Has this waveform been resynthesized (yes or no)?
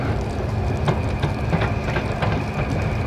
no